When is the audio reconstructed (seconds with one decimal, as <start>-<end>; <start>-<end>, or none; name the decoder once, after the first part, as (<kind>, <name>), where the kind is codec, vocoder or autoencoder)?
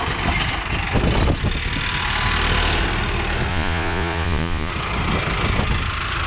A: 3.5-4.7 (vocoder, Vocos)